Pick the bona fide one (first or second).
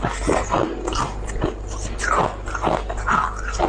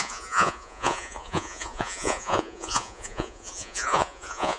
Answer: first